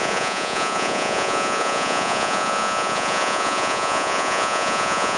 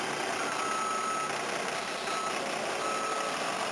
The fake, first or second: first